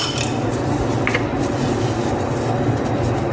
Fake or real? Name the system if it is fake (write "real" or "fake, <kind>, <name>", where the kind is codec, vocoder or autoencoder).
real